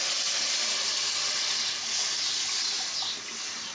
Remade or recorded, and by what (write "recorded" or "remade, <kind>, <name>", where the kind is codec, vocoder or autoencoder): recorded